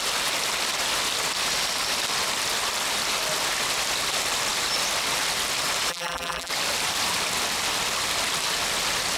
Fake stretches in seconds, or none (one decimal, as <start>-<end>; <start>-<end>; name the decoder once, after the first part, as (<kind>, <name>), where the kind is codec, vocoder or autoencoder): 5.9-6.5 (vocoder, BigVGAN v2)